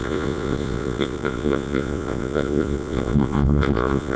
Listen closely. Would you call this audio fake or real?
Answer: fake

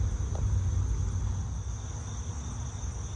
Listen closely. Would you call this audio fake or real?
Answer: real